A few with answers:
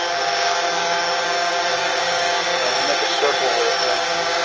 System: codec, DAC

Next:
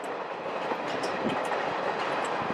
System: vocoder, BigVGAN v2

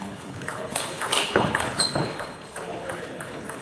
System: codec, HILCodec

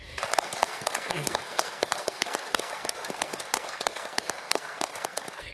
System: codec, SNAC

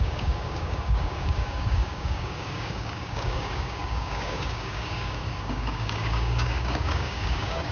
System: codec, DAC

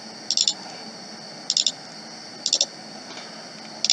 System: none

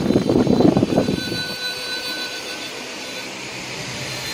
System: vocoder, BigVGAN v2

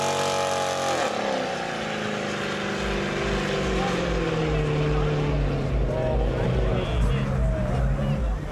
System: none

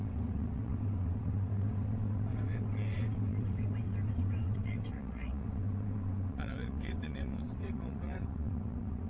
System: vocoder, WaveNeXt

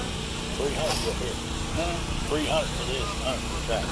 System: none